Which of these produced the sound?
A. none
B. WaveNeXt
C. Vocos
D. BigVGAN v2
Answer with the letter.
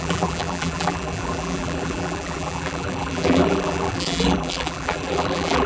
D